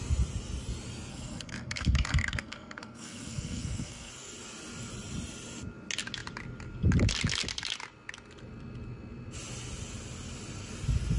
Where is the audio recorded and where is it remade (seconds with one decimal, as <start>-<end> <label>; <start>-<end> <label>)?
0.0-1.1 recorded; 1.1-4.1 remade; 4.1-11.2 recorded